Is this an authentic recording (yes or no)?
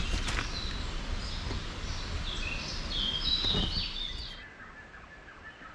yes